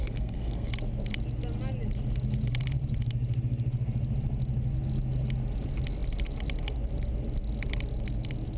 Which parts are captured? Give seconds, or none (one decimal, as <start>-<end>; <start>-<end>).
0.7-8.6